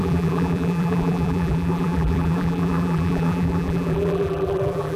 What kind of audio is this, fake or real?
fake